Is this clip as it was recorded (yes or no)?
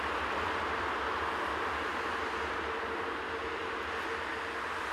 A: yes